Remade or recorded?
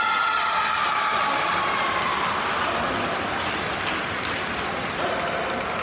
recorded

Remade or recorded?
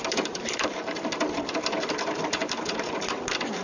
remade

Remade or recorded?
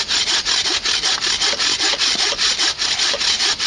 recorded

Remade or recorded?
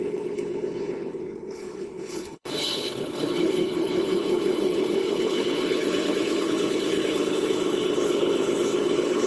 remade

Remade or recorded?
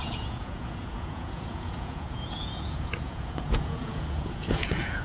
remade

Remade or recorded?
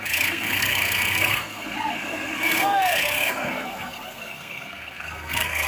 remade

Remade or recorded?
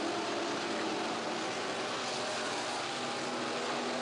recorded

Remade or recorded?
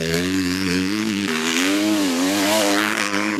remade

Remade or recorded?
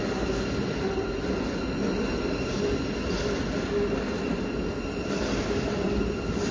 recorded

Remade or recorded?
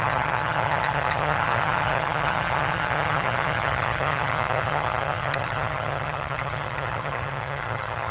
remade